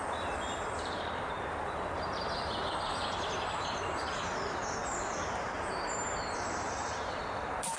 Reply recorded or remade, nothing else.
remade